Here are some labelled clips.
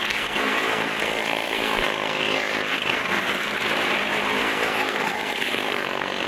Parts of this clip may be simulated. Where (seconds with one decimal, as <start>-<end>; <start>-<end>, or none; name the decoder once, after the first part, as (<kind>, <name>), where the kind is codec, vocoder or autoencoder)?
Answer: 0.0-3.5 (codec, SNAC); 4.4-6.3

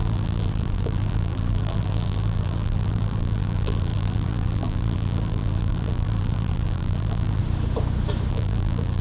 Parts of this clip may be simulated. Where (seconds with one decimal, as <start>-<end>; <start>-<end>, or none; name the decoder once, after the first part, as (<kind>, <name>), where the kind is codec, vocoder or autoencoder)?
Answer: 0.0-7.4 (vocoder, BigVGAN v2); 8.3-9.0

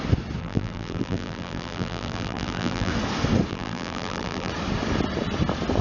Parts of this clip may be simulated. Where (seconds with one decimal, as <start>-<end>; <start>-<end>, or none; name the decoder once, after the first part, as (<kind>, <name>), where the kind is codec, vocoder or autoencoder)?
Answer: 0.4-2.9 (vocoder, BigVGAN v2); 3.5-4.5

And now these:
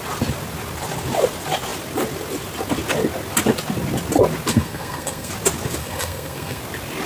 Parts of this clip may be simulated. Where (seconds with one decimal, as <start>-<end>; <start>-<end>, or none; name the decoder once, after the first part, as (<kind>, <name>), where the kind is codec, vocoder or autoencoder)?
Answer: 4.5-5.3 (codec, SNAC); 5.8-6.6